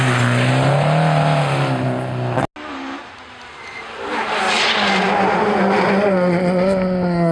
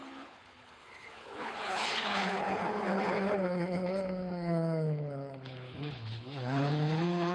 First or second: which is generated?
second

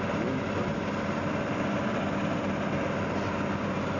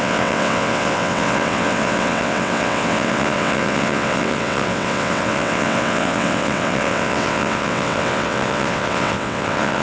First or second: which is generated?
second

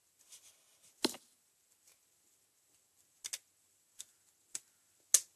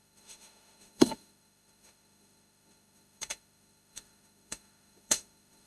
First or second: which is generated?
second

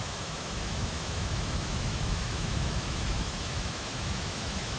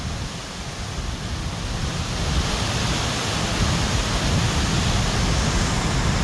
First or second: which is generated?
first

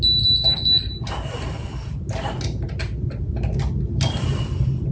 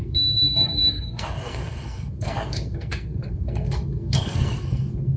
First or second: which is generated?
second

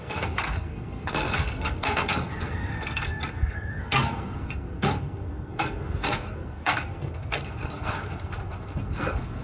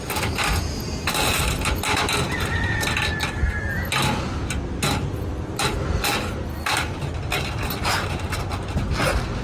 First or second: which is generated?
first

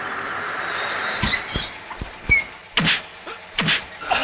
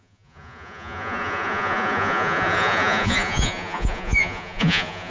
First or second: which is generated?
second